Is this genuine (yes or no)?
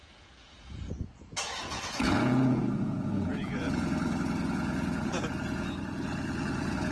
no